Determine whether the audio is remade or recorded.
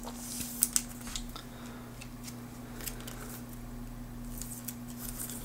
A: recorded